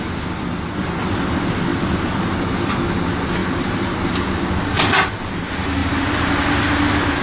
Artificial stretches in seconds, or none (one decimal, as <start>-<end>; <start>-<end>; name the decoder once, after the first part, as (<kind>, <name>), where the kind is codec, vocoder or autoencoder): 1.7-2.3 (vocoder, BigVGAN v2); 3.4-4.4; 5.8-6.3